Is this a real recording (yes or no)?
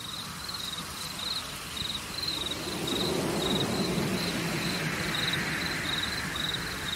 yes